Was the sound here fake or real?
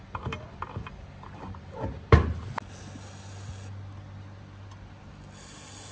real